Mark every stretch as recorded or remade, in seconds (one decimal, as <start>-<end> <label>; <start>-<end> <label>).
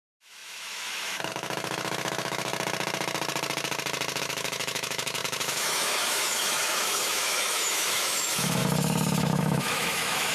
0.0-2.5 remade; 2.5-4.2 recorded; 4.2-8.6 remade; 8.6-9.3 recorded; 9.3-10.3 remade